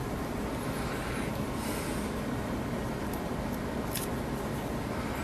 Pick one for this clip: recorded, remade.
recorded